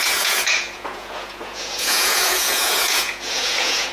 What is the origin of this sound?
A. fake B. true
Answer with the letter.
A